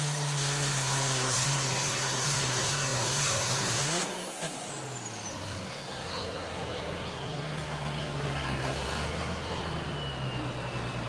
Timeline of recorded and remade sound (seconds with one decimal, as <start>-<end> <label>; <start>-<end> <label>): 0.0-4.7 remade; 4.7-5.3 recorded; 5.3-9.6 remade; 9.6-11.1 recorded